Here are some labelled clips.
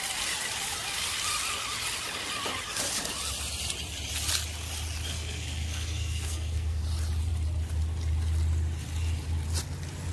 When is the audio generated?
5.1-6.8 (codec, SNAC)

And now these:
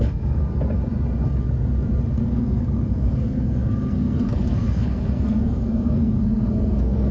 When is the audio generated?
0.0-0.4 (codec, SNAC); 2.1-7.1

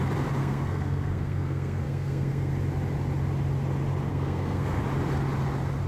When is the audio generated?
0.4-2.5 (codec, SNAC); 4.1-4.8

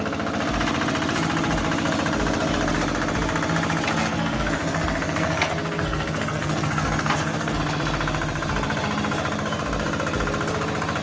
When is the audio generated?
4.0-7.6 (codec, SNAC)

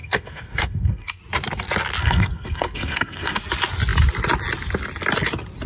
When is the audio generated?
0.0-1.2 (codec, SNAC); 2.0-3.4